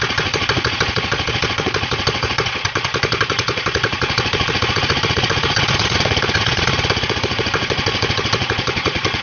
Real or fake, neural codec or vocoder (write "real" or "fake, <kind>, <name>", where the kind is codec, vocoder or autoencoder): fake, vocoder, Vocos